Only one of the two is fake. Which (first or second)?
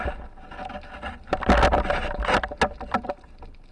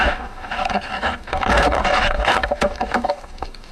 second